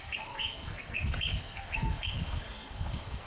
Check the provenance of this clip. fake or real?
fake